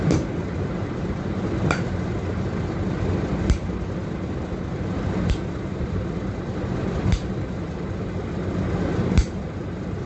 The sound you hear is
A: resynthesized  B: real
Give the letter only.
B